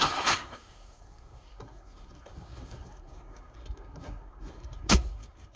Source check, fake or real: fake